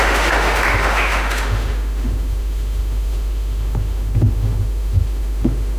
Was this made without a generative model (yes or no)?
no